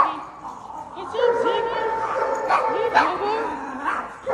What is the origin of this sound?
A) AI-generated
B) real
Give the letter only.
B